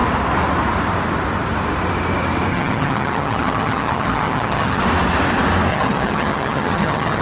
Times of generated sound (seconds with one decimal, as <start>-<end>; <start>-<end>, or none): 2.5-4.8; 5.7-7.2